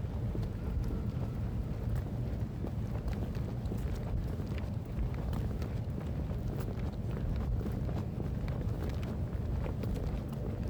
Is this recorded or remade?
recorded